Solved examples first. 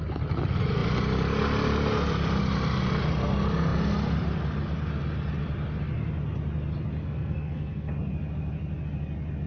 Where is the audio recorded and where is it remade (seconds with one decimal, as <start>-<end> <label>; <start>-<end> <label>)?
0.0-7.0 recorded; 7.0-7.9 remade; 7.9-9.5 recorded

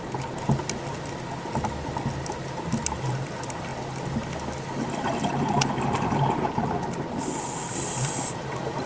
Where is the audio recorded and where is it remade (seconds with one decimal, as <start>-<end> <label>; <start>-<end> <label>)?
0.0-8.9 recorded

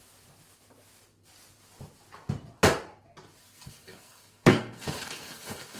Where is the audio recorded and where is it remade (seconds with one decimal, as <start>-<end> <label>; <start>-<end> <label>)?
0.0-3.4 recorded; 3.4-5.8 remade

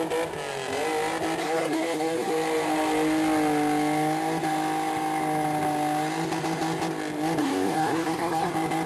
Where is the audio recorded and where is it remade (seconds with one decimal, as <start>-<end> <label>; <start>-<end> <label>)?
0.0-1.4 recorded; 1.4-2.3 remade; 2.3-7.4 recorded; 7.4-8.5 remade; 8.5-8.9 recorded

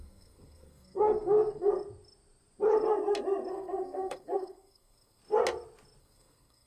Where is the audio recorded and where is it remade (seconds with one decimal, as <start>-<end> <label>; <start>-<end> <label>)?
0.0-1.7 remade; 1.7-3.5 recorded; 3.5-5.2 remade; 5.2-6.0 recorded; 6.0-6.7 remade